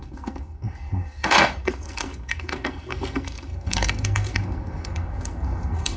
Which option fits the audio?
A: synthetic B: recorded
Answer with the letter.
A